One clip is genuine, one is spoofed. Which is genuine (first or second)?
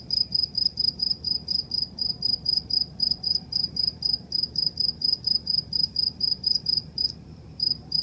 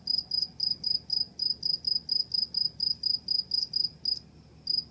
second